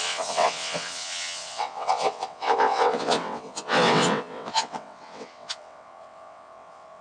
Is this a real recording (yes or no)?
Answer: no